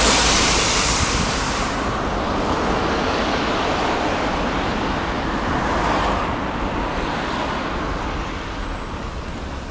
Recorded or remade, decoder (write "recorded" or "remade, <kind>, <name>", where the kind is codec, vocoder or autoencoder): recorded